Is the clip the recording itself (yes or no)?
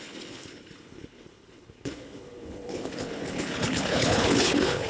no